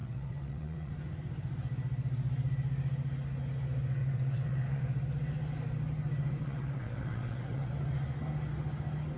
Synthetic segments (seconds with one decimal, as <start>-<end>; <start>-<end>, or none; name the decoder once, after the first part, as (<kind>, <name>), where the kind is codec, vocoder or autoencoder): 0.0-0.9 (vocoder, WaveNeXt); 4.0-4.8; 6.4-7.7